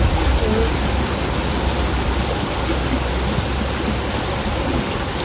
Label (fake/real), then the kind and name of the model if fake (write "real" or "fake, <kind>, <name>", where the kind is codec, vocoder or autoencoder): real